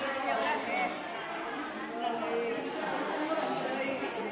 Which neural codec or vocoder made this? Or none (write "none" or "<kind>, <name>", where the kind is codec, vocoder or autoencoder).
none